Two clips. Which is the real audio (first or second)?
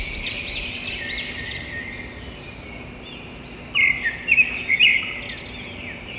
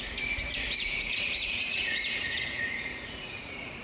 first